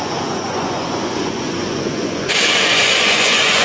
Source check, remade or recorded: remade